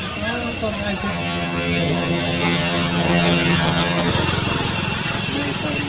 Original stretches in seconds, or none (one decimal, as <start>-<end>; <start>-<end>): 0.0-1.1; 4.1-5.9